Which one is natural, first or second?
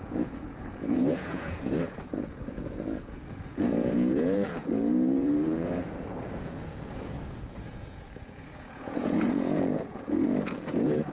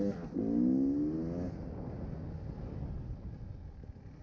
second